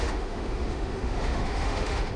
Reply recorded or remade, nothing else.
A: remade